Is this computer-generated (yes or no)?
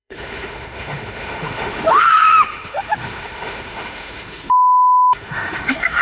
yes